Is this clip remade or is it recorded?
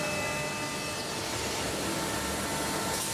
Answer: recorded